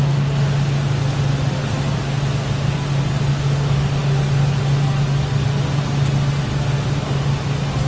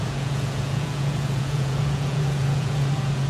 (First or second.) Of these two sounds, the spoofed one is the second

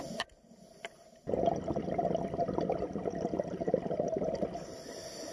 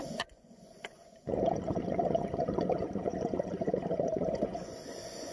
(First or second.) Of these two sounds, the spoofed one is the second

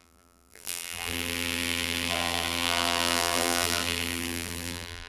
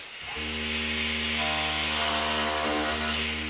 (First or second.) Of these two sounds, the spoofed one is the first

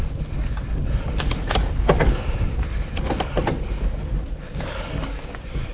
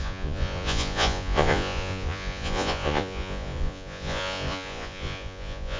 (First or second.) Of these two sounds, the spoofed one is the second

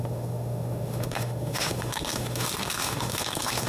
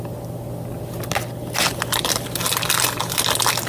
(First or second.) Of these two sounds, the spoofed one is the first